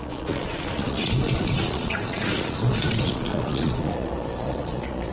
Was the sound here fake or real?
fake